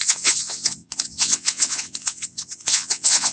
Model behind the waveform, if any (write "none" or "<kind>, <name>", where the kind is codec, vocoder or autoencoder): vocoder, WaveNeXt